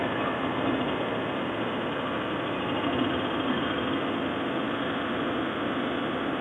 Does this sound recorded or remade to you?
recorded